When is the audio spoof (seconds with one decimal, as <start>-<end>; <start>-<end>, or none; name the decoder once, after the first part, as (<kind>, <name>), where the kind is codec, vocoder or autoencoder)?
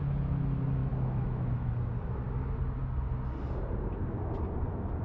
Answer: 0.8-1.7 (autoencoder, DAC-VAE)